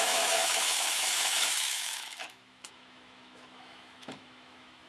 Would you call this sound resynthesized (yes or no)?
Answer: yes